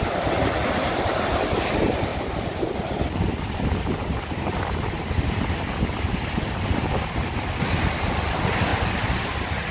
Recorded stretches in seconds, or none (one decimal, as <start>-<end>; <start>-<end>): 0.0-9.7